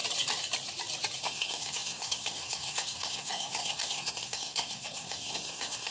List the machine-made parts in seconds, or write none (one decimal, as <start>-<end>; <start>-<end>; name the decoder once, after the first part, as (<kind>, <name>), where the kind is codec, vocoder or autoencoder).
1.2-5.9 (codec, SNAC)